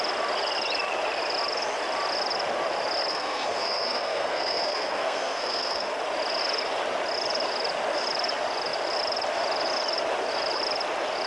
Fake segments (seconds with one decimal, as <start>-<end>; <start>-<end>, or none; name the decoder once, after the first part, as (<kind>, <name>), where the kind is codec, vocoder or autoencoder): 3.1-5.9 (codec, SNAC)